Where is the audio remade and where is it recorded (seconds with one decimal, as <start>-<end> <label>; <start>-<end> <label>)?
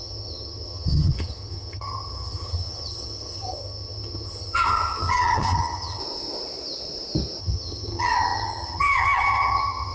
0.0-6.0 remade; 6.0-7.4 recorded; 7.4-9.9 remade